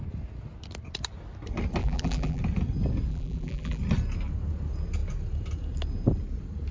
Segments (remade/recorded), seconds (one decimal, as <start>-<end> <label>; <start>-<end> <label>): 0.0-1.8 recorded; 1.8-2.4 remade; 2.4-3.1 recorded; 3.1-3.8 remade; 3.8-6.7 recorded